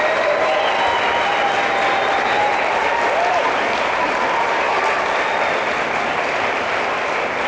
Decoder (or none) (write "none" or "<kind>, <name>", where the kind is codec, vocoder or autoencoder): none